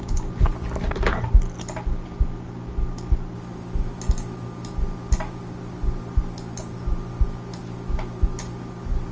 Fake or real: real